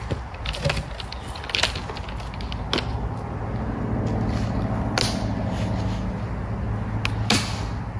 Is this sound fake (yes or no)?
no